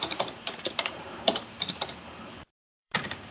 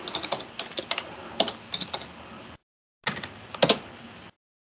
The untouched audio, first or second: second